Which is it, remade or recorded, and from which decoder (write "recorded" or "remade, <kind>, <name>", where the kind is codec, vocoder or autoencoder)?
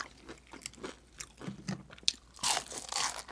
recorded